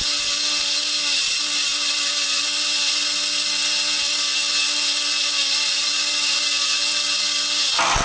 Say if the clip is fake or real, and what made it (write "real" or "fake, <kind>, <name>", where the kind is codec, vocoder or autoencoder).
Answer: real